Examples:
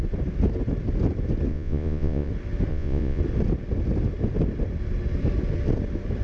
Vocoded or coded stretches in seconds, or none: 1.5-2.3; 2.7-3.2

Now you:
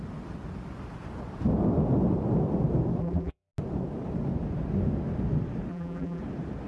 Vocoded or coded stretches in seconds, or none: 3.0-3.5; 5.7-6.2

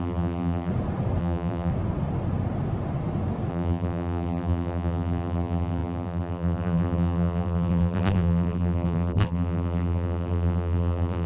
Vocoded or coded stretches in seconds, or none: 0.0-0.7; 1.2-1.7; 3.5-11.3

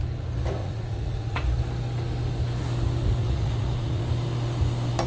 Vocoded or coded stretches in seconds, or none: 0.6-1.6; 3.2-4.0

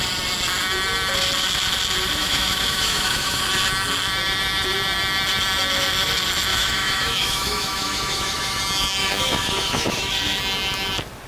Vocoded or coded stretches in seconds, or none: 2.2-3.4; 6.5-8.6; 9.0-10.4

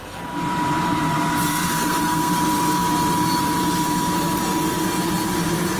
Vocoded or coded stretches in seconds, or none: 1.5-2.3